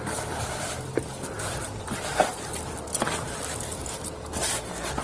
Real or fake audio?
fake